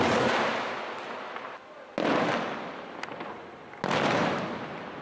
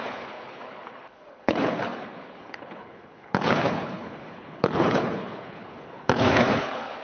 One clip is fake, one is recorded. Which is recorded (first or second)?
first